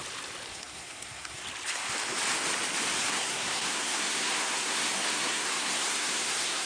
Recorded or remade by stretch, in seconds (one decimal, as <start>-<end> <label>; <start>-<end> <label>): 0.0-0.5 recorded; 0.5-1.4 remade; 1.4-3.0 recorded; 3.0-6.7 remade